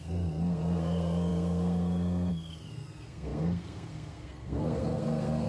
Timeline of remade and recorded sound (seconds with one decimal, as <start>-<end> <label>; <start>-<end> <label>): 0.0-5.5 remade